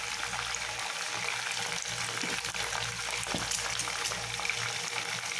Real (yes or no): yes